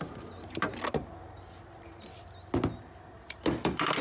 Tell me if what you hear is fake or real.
real